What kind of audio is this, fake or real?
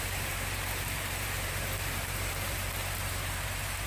fake